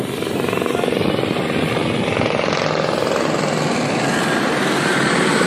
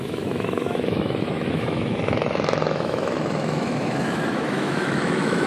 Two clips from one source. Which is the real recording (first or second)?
first